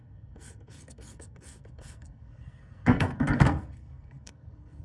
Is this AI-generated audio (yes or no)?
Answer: yes